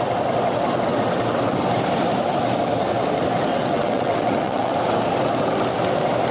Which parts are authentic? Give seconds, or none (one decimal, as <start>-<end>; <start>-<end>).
0.0-3.5; 4.7-6.3